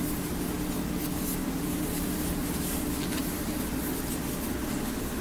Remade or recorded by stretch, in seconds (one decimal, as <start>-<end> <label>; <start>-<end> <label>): 0.0-1.4 recorded; 1.4-3.6 remade; 3.6-5.2 recorded